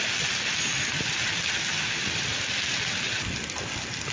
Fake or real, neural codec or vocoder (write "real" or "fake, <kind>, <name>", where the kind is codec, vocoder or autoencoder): real